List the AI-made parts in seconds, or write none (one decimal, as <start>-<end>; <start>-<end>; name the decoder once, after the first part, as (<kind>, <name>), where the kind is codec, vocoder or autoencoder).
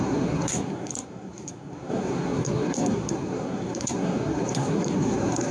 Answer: 0.0-5.5 (codec, SNAC)